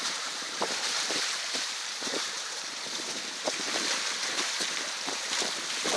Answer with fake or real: fake